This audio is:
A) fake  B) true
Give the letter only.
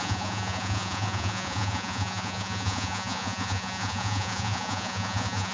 A